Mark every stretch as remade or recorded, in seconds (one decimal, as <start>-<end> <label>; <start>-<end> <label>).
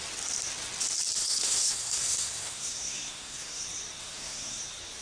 0.0-1.2 recorded; 1.2-3.6 remade; 3.6-4.0 recorded; 4.0-4.6 remade; 4.6-5.0 recorded